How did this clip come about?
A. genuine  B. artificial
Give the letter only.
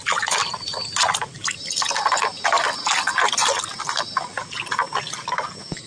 A